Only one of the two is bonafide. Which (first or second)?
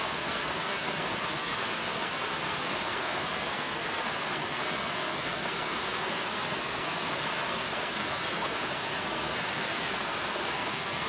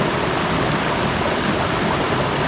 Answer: second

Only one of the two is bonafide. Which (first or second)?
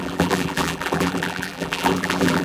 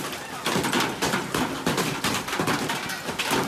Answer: second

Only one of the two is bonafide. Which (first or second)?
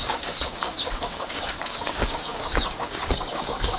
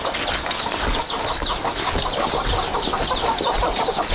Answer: second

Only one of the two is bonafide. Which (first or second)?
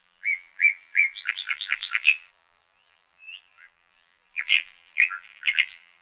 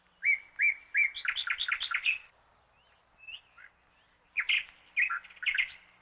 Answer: second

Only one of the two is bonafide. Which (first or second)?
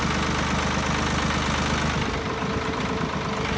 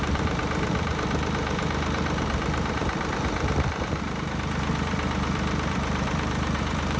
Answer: first